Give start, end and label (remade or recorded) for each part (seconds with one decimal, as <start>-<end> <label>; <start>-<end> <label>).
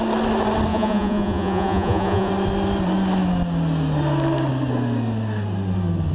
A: 0.0-0.7 recorded; 0.7-2.3 remade; 2.3-6.1 recorded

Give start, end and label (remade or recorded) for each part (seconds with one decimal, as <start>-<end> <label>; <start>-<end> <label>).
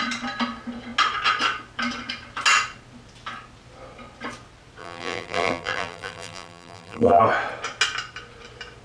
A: 0.0-4.8 recorded; 4.8-7.2 remade; 7.2-8.8 recorded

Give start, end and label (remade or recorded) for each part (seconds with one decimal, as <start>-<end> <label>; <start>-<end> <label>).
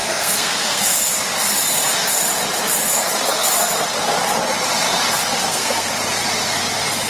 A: 0.0-1.0 remade; 1.0-5.4 recorded; 5.4-5.9 remade; 5.9-7.1 recorded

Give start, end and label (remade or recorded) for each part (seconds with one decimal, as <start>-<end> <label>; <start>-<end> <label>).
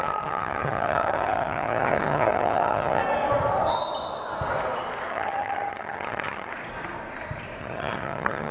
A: 0.0-3.0 remade; 3.0-5.1 recorded; 5.1-6.5 remade; 6.5-7.6 recorded; 7.6-8.5 remade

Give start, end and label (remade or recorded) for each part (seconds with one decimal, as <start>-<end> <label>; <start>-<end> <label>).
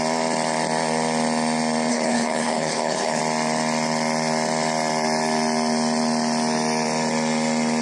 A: 0.0-1.9 recorded; 1.9-3.2 remade; 3.2-7.8 recorded